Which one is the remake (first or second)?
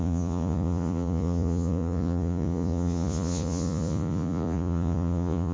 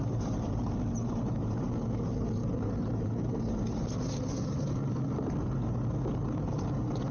first